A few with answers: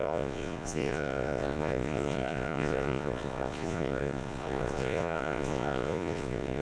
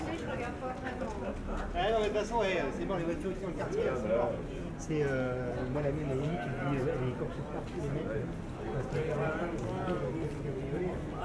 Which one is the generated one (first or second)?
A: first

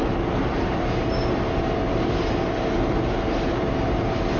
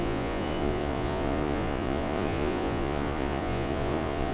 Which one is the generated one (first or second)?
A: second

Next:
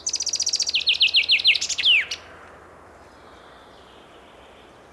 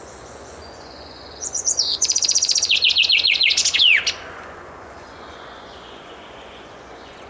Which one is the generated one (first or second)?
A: second